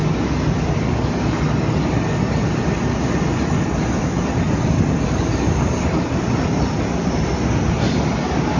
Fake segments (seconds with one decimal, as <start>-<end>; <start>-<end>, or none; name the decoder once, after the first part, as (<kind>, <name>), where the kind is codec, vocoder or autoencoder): none